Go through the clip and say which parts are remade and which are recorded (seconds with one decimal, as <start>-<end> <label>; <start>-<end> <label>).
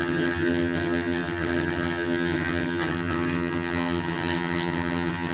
0.0-5.3 remade